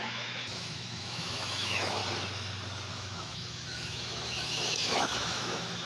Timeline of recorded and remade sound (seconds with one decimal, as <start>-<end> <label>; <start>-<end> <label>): 0.0-2.0 remade; 2.0-2.9 recorded; 2.9-5.9 remade